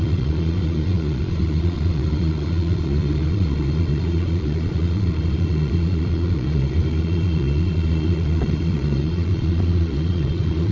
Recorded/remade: remade